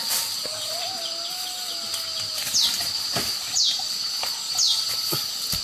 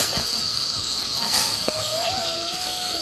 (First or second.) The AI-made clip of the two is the second